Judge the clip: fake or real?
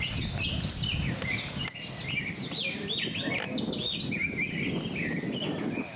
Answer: real